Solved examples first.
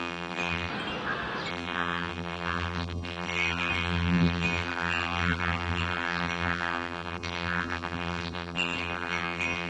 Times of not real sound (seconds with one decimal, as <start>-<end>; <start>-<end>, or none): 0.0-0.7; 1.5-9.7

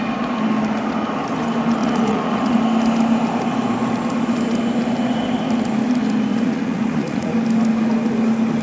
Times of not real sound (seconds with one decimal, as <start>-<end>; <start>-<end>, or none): 1.8-2.6; 6.3-7.3

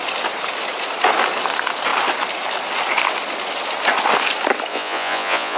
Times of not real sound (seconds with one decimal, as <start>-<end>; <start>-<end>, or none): 4.7-5.6

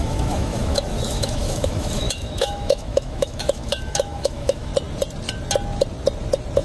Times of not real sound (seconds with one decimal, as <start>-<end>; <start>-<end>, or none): 0.0-4.7

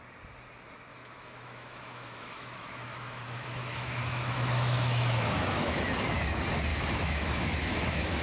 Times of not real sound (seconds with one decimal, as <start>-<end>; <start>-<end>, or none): 0.9-5.8; 6.7-8.2

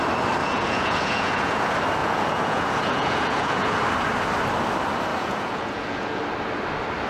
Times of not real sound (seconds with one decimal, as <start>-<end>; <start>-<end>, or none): 0.4-1.6; 2.0-3.8; 5.1-6.2